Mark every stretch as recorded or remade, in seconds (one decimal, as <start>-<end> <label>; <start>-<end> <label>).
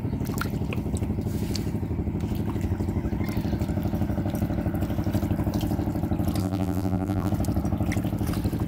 0.0-6.4 recorded; 6.4-7.3 remade; 7.3-8.7 recorded